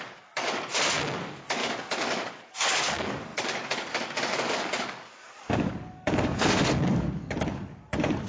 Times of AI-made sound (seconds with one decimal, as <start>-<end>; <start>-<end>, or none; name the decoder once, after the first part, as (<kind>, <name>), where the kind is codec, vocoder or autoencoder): 0.0-8.3 (codec, DAC)